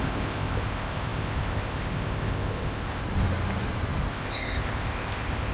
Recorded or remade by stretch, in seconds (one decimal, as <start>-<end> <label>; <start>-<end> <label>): 0.0-3.0 remade; 3.0-4.1 recorded; 4.1-5.5 remade